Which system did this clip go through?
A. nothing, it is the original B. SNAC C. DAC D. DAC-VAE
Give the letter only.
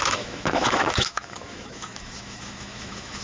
D